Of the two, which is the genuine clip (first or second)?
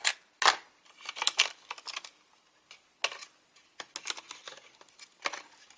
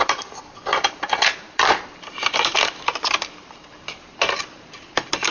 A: first